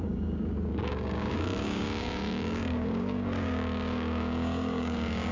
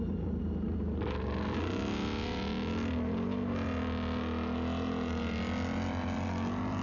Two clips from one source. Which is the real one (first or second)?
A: second